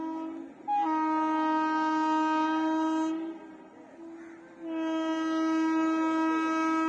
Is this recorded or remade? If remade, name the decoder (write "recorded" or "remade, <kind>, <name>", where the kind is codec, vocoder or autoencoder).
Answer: recorded